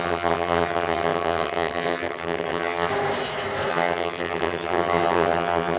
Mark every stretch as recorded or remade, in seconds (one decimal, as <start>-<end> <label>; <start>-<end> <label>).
0.0-2.9 remade; 2.9-3.7 recorded; 3.7-5.8 remade